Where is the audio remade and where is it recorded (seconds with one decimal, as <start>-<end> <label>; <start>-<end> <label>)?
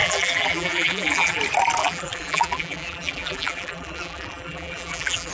0.0-1.4 remade; 1.4-1.8 recorded; 1.8-5.3 remade